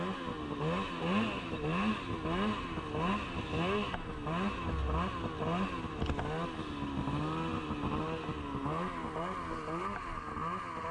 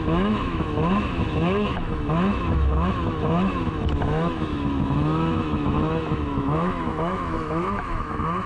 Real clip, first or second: first